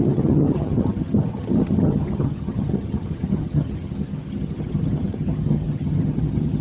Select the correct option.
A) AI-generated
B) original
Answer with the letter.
A